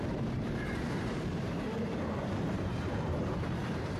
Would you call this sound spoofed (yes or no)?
yes